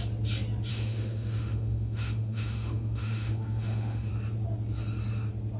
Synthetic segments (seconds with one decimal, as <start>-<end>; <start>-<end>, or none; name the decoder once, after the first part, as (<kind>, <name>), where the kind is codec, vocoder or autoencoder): 0.7-4.1 (autoencoder, DAC-VAE)